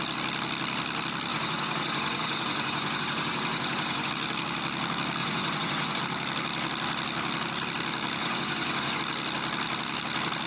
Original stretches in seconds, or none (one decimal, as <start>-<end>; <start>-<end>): 0.0-1.3; 4.1-5.2; 6.0-8.2; 9.0-10.5